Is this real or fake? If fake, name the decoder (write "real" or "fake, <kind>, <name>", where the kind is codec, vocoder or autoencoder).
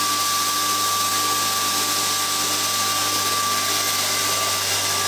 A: real